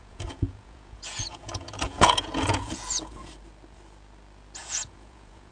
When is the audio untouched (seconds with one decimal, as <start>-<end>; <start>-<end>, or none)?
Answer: 3.3-4.6